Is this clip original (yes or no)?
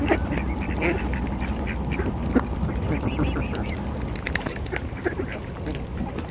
yes